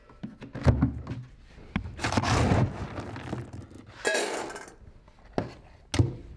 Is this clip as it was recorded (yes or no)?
yes